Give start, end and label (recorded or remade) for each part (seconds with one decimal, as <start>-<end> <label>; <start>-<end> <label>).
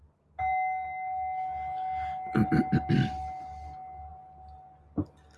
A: 0.0-5.4 recorded